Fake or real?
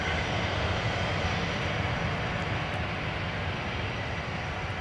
real